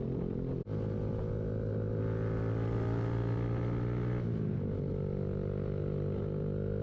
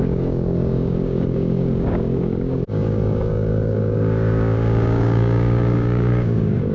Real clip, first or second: first